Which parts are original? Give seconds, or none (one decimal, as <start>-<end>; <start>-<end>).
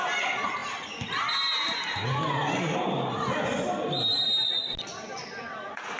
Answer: 0.0-4.6; 5.6-6.0